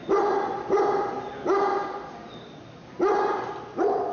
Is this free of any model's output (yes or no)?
yes